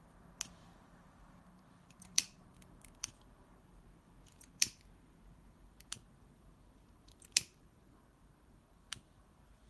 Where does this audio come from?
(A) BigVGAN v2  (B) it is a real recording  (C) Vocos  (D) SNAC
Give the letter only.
A